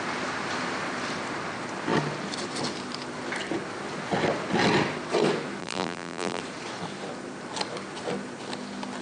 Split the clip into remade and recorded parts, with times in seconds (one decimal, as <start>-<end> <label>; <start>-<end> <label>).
0.0-5.6 recorded; 5.6-6.4 remade; 6.4-9.0 recorded